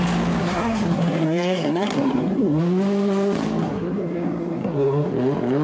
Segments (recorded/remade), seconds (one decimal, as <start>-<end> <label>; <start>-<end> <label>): 0.0-0.4 recorded; 0.4-2.6 remade; 2.6-3.6 recorded; 3.6-5.1 remade; 5.1-5.6 recorded